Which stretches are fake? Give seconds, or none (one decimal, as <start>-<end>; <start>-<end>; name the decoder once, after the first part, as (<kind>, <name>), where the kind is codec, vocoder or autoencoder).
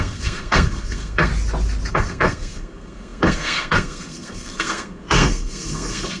0.0-1.3 (codec, SNAC); 1.9-6.2